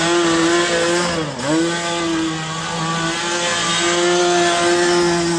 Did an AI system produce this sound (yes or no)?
no